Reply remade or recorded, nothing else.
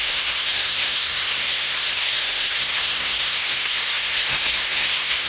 remade